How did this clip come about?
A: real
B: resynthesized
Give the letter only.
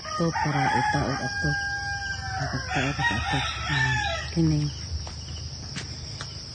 A